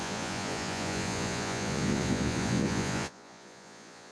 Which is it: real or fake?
fake